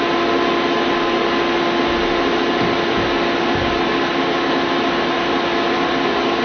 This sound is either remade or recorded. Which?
recorded